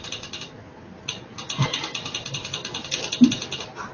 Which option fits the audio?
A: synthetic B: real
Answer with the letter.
B